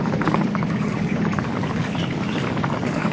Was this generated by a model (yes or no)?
yes